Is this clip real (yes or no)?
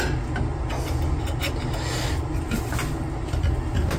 yes